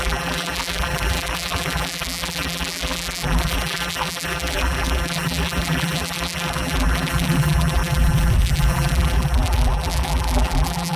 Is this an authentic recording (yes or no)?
no